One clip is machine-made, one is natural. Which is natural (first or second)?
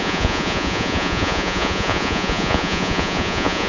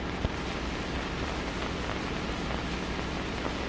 second